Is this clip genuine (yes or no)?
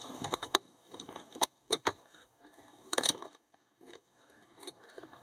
no